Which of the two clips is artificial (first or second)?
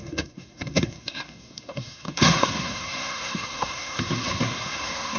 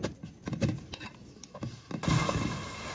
first